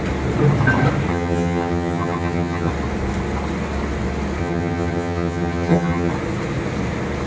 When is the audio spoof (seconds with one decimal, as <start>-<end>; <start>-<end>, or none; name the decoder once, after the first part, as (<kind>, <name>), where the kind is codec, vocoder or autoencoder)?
1.1-2.7 (vocoder, HiFi-GAN); 4.4-6.1